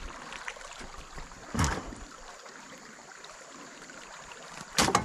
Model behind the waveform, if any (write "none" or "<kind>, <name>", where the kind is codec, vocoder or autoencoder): none